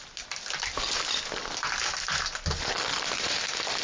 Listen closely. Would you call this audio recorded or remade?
recorded